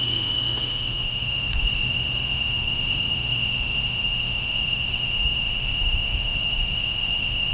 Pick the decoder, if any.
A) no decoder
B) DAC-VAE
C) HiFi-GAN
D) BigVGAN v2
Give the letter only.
B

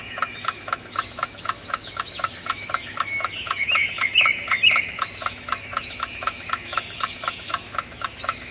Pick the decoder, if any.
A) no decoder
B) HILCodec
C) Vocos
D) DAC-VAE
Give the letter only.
D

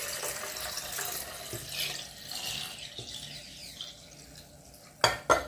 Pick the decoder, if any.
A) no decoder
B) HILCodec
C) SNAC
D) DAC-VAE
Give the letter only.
A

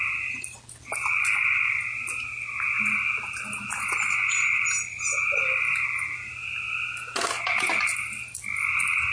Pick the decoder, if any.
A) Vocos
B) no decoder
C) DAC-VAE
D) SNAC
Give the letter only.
B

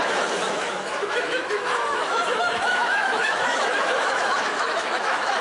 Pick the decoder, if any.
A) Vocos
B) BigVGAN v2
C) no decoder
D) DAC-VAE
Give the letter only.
D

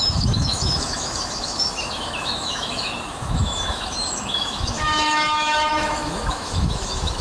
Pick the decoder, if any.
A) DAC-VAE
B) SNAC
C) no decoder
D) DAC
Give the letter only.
A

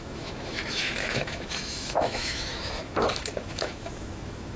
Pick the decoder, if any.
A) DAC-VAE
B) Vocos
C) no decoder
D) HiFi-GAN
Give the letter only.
A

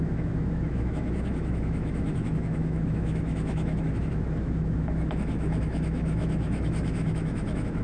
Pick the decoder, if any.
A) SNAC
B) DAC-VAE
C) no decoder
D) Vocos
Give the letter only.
B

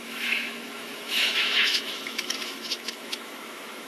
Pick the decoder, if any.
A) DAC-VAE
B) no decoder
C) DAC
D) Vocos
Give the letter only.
A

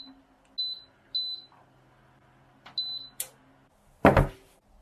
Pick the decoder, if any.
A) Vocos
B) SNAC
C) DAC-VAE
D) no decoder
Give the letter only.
D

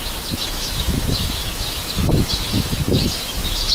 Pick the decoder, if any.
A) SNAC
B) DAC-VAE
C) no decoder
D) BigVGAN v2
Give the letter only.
B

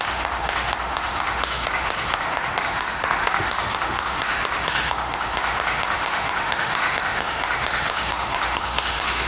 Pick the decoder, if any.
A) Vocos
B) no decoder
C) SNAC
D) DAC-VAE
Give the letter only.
D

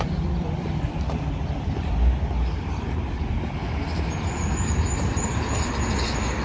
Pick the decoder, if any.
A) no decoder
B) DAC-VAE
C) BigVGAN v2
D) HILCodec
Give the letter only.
A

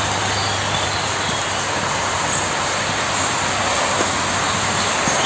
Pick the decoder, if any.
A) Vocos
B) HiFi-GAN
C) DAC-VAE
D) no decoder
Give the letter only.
D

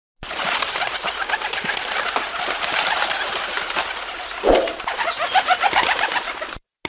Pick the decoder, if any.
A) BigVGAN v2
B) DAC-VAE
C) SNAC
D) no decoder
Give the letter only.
D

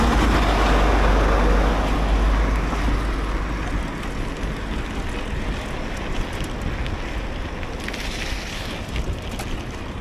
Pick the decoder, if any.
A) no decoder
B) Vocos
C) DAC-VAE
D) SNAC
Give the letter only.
A